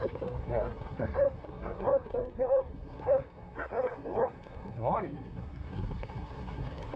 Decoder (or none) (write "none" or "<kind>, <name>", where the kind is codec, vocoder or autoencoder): codec, SNAC